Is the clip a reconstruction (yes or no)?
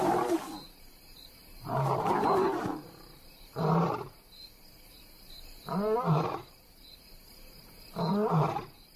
yes